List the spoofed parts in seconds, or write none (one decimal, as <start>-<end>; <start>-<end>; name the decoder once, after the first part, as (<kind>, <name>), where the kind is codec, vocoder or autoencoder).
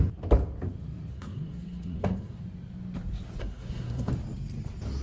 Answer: 1.1-2.4 (codec, SNAC); 3.4-4.1